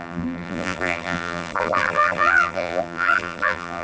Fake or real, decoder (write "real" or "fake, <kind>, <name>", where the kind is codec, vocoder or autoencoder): fake, vocoder, BigVGAN v2